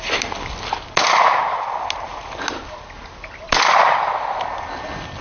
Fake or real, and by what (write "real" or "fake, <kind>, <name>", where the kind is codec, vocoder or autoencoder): real